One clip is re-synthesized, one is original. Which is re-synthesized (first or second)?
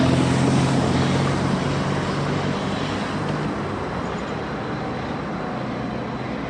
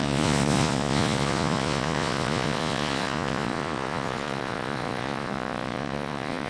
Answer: second